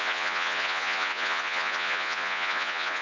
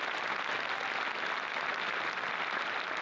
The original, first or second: second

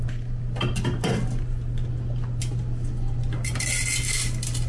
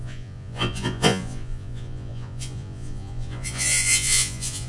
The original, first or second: first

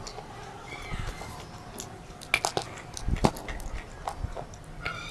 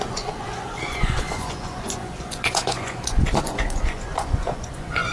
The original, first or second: first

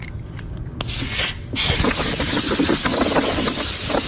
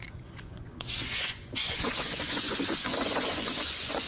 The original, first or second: first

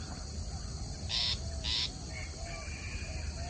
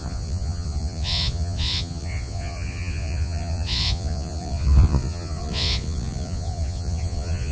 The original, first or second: first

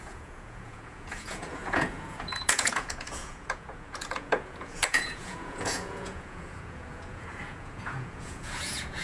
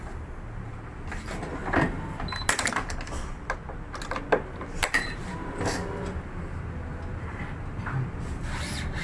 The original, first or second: second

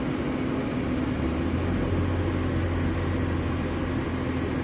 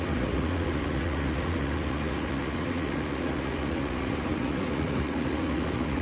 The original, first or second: first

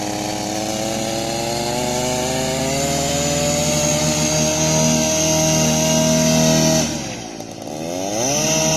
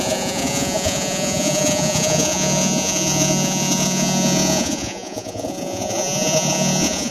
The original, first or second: first